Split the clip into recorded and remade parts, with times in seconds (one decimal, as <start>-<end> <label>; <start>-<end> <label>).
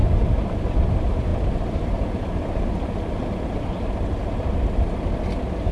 0.0-0.7 recorded; 0.7-5.7 remade